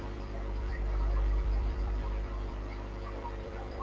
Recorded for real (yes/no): no